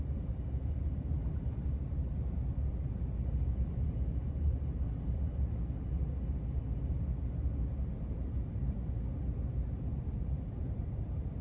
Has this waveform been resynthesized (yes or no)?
no